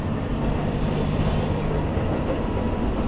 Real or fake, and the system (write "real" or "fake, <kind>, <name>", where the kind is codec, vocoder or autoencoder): real